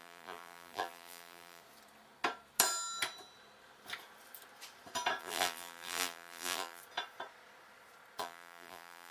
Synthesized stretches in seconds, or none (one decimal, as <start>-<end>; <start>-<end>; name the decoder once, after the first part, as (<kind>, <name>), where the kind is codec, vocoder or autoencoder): 0.0-1.6 (vocoder, BigVGAN v2); 5.2-6.8; 8.2-9.1